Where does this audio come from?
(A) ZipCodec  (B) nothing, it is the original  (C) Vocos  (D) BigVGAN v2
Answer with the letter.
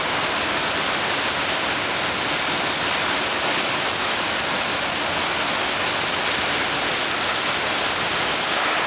B